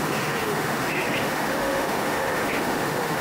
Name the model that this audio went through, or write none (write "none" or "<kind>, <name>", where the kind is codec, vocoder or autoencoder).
autoencoder, DAC-VAE